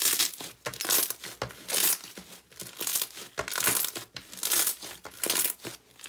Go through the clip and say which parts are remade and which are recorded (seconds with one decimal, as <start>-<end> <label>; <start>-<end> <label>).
0.0-6.1 recorded